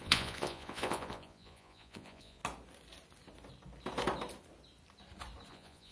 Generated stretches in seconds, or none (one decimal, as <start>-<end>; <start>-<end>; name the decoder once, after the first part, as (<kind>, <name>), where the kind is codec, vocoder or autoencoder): 0.0-2.4 (vocoder, Vocos); 5.5-5.9